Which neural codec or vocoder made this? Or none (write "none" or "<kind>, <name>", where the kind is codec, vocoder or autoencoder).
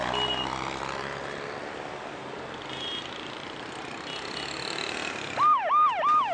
none